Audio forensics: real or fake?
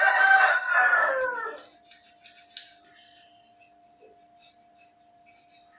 real